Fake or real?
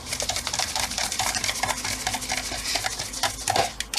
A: real